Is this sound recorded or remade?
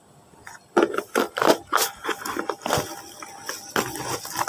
recorded